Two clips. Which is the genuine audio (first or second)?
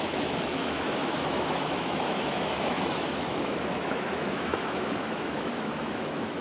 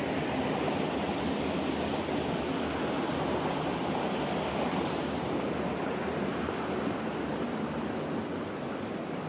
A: second